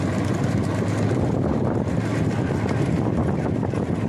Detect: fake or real real